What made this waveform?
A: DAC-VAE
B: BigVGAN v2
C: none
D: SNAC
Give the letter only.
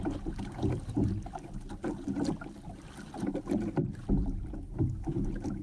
C